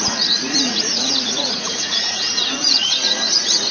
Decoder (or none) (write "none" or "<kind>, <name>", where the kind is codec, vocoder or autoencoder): vocoder, Vocos